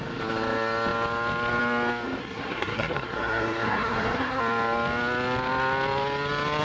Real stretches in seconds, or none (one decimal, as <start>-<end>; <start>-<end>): 0.0-2.2; 4.4-6.6